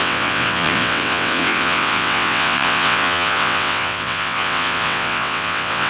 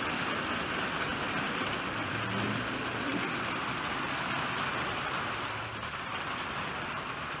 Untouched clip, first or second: second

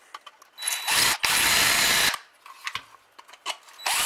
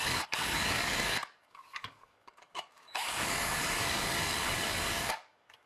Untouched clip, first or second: first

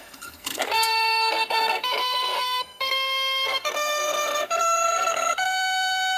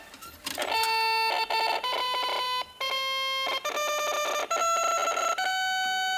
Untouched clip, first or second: second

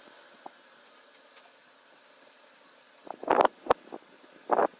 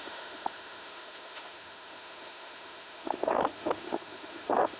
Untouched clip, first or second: first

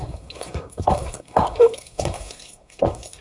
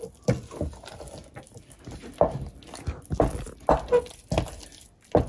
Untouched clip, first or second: second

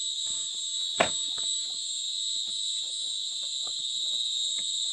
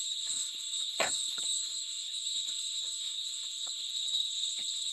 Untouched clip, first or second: first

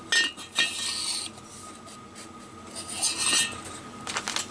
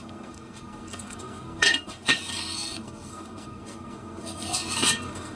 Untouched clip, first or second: first